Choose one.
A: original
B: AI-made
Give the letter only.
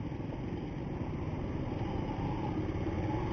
A